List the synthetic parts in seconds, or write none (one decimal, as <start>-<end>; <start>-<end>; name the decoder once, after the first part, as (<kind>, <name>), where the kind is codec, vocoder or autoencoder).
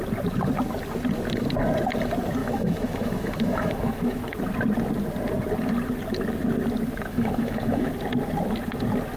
2.4-4.2 (autoencoder, DAC-VAE); 7.1-7.9